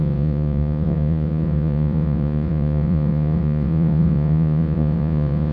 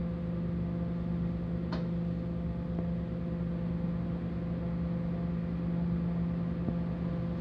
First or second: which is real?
second